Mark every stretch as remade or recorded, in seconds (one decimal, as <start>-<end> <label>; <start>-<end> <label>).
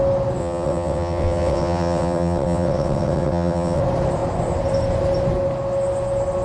0.0-0.4 recorded; 0.4-3.8 remade; 3.8-6.4 recorded